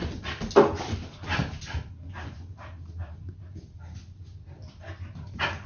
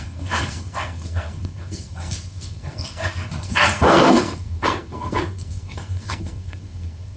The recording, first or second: first